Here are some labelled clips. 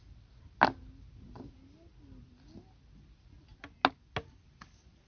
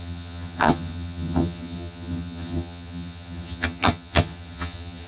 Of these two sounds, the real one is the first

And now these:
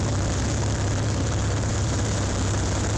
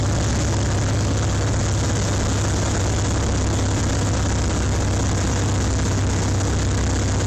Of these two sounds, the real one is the second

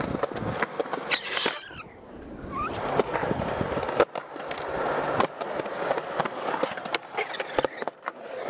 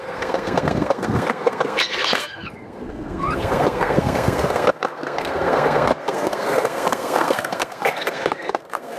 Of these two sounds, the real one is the first